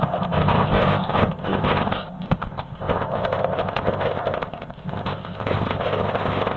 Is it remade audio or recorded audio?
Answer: remade